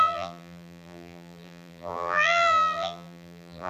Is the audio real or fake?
fake